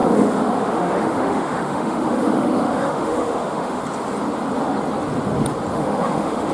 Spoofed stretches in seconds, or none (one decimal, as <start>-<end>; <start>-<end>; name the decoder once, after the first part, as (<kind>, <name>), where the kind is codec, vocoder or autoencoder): 0.0-3.8 (autoencoder, DAC-VAE); 5.7-6.5